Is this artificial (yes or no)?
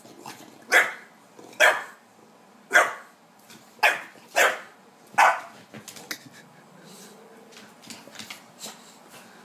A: no